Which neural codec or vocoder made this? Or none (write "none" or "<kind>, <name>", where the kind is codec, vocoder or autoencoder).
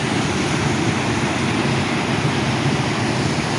none